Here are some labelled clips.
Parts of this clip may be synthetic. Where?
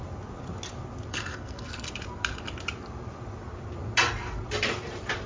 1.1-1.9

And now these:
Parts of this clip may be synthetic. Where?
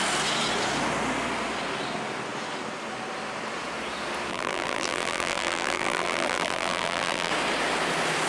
4.3-7.3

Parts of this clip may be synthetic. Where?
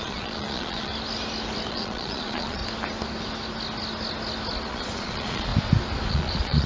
0.0-0.9; 1.7-2.6; 4.7-5.5; 6.1-6.7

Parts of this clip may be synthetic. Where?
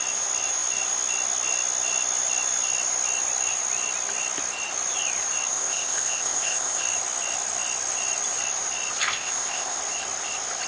5.5-6.8; 9.0-9.8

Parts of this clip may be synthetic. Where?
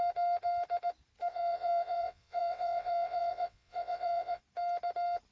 1.3-4.4